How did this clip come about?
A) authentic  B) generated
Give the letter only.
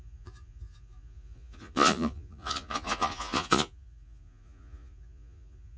B